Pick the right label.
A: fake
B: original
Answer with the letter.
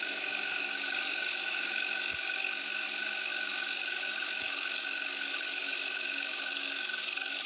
A